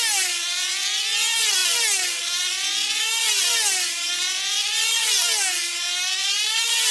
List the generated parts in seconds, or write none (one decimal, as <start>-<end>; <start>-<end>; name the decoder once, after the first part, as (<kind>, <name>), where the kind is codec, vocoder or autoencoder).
1.6-5.1 (vocoder, BigVGAN v2); 6.2-6.9